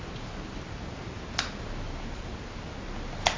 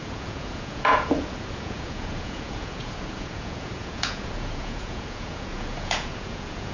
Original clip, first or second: first